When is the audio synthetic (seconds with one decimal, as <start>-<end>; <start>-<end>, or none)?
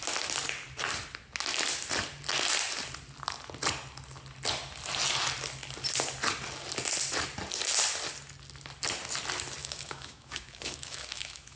9.6-11.6